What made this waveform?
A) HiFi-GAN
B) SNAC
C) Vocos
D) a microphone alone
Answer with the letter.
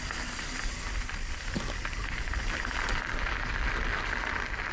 D